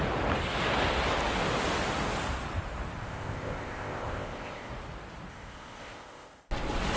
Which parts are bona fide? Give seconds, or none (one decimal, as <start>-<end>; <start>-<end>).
0.0-3.0; 4.7-5.3; 6.5-7.0